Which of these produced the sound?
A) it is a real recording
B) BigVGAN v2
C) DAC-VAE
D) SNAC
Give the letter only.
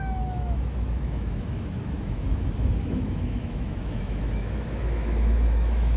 C